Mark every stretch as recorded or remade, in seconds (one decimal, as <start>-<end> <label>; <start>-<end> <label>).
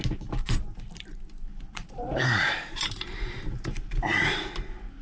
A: 0.0-1.5 recorded; 1.5-4.5 remade; 4.5-5.0 recorded